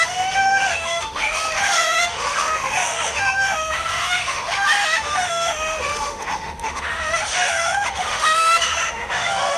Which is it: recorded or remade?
remade